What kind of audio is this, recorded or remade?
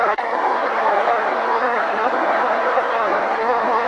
remade